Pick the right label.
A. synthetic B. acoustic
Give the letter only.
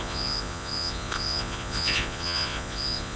A